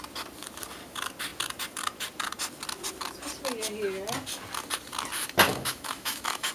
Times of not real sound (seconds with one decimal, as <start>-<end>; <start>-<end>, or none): 5.5-6.5